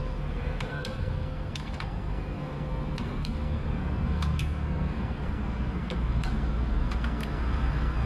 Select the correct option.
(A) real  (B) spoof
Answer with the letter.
B